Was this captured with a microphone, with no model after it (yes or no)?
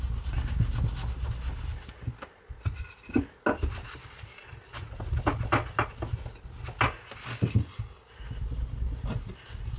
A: yes